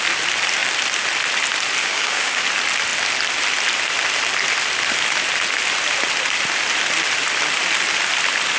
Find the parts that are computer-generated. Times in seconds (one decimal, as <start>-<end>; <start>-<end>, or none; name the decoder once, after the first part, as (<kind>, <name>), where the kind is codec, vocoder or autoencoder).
1.8-2.4 (codec, DAC)